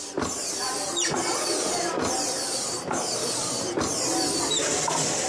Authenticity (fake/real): fake